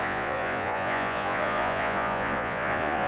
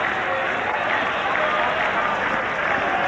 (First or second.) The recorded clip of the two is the second